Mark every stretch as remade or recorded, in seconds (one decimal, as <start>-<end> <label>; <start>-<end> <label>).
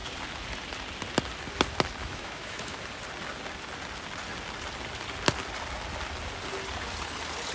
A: 0.0-2.0 recorded; 2.0-2.8 remade; 2.8-7.5 recorded